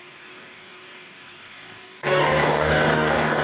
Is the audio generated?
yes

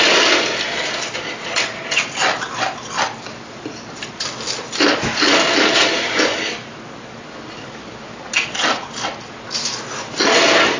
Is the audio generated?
no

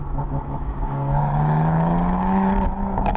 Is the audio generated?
yes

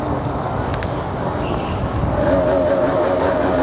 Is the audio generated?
yes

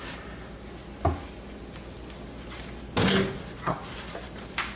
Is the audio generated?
no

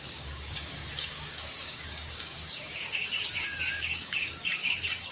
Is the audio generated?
yes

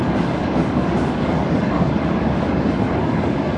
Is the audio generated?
yes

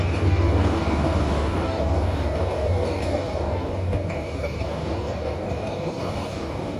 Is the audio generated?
yes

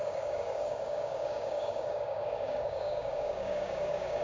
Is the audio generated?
yes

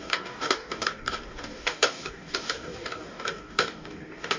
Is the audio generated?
yes